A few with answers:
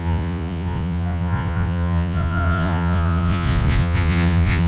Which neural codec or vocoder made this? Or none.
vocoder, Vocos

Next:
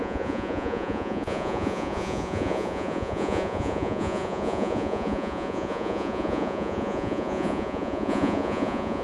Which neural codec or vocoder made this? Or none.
vocoder, Vocos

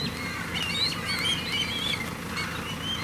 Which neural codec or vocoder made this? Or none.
none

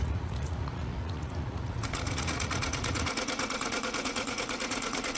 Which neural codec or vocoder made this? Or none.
vocoder, Vocos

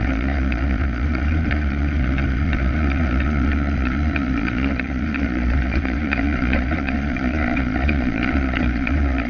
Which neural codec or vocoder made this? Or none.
vocoder, Vocos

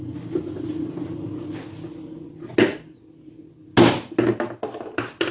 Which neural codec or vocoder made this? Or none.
none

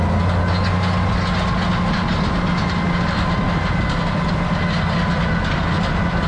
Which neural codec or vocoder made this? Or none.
none